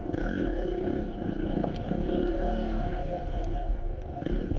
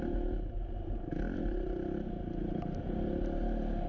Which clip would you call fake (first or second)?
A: first